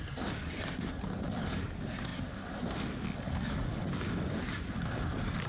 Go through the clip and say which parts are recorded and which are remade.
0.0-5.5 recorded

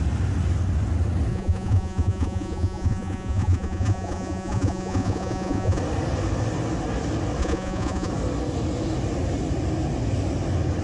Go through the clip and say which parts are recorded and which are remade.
0.0-1.3 recorded; 1.3-5.8 remade; 5.8-7.4 recorded; 7.4-8.1 remade; 8.1-10.8 recorded

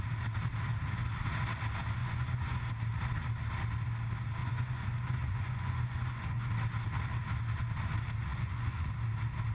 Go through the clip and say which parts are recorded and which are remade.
0.0-2.0 recorded; 2.0-2.7 remade; 2.7-4.4 recorded; 4.4-6.5 remade; 6.5-8.3 recorded; 8.3-8.9 remade; 8.9-9.5 recorded